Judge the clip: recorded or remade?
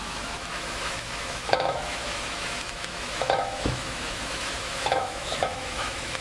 remade